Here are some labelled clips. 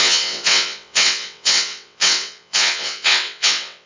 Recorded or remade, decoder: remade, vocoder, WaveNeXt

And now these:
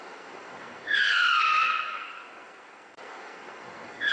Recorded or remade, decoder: remade, codec, SNAC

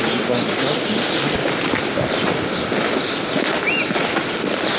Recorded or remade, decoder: recorded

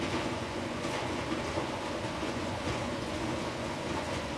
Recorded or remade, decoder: remade, vocoder, Vocos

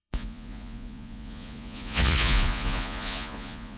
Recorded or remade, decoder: remade, vocoder, Vocos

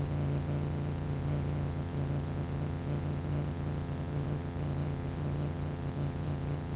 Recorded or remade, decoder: remade, vocoder, HiFi-GAN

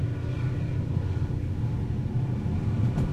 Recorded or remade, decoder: remade, vocoder, BigVGAN v2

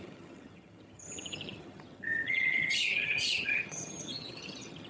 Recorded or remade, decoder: remade, vocoder, HiFi-GAN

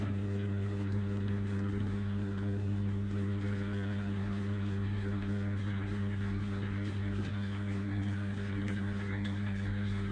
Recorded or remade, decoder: remade, codec, SNAC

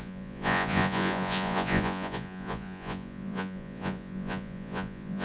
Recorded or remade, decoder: remade, vocoder, Vocos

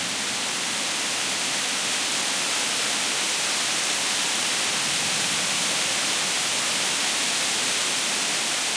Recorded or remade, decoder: recorded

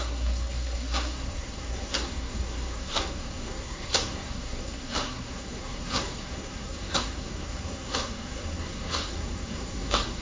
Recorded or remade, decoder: remade, codec, SNAC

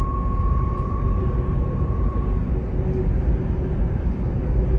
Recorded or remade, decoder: recorded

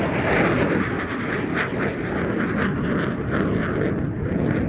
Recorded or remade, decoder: recorded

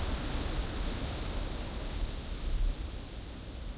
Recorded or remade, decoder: recorded